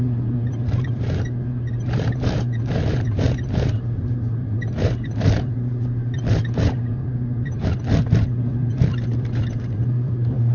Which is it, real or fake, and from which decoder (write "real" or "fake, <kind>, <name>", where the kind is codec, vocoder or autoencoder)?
fake, vocoder, BigVGAN v2